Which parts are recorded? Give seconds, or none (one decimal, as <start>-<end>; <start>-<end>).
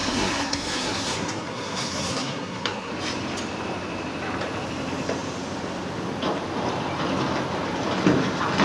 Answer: 2.9-8.6